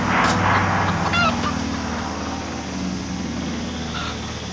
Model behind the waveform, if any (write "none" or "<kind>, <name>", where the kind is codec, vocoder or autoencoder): none